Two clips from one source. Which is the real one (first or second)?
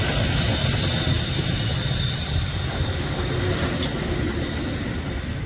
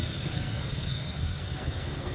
first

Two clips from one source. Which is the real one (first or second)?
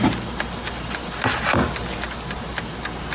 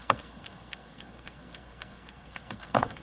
first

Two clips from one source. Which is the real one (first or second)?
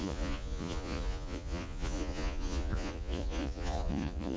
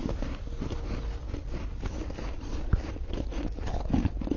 second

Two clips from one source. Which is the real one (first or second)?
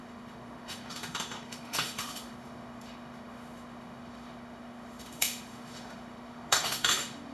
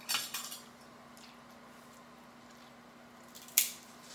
second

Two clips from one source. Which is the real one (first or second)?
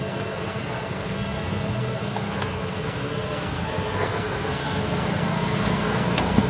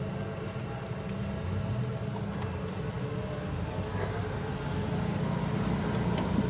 second